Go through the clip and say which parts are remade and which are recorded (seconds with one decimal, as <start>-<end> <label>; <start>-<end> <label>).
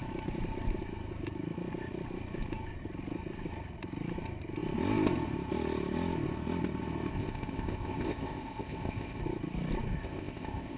0.0-7.1 recorded; 7.1-9.2 remade; 9.2-9.9 recorded; 9.9-10.8 remade